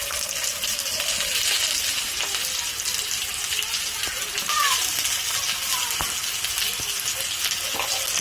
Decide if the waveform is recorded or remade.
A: recorded